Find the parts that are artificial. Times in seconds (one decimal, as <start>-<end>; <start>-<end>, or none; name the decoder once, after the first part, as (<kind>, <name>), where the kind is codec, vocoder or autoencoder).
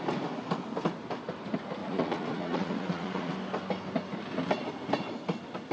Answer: 1.8-3.3 (vocoder, Vocos)